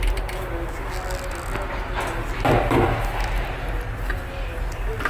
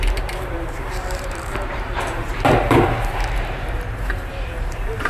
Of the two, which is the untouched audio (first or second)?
first